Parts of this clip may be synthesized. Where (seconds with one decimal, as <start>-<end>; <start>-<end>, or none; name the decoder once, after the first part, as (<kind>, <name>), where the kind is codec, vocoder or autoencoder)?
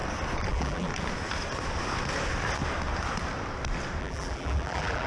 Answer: 0.5-0.9 (vocoder, BigVGAN v2); 4.0-5.1